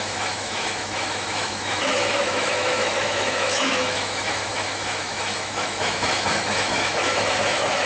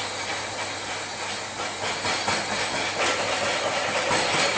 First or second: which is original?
second